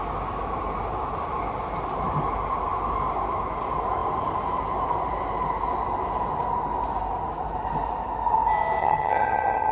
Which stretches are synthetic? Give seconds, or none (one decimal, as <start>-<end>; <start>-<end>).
8.8-9.7